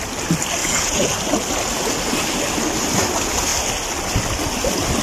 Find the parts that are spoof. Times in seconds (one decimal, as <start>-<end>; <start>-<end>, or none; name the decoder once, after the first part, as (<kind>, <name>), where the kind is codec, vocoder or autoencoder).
0.6-1.1 (vocoder, Vocos)